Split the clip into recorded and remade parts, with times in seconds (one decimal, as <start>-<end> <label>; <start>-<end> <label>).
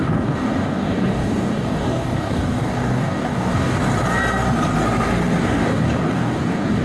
0.0-3.8 remade; 3.8-5.4 recorded; 5.4-6.8 remade